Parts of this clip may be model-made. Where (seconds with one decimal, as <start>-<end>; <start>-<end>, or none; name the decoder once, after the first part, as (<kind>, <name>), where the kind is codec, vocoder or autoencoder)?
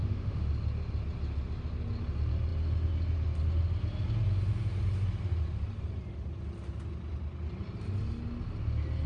0.0-0.5 (autoencoder, DAC-VAE)